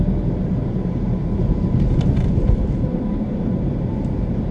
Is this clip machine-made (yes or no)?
yes